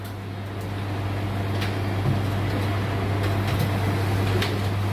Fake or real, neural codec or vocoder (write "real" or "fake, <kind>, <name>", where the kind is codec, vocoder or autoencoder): real